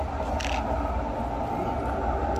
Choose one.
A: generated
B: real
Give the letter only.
B